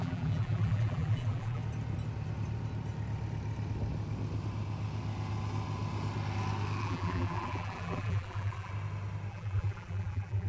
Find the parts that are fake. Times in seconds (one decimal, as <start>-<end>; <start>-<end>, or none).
0.0-1.6; 6.8-8.7; 9.3-10.5